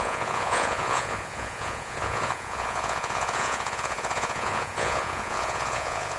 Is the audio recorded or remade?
remade